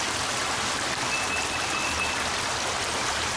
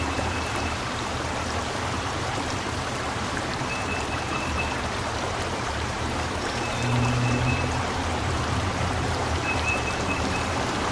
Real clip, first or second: first